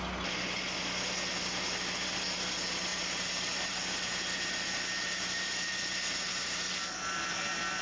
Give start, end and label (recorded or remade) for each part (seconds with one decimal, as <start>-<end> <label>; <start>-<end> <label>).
0.0-2.9 recorded; 2.9-6.7 remade; 6.7-7.8 recorded